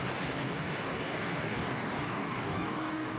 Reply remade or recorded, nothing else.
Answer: remade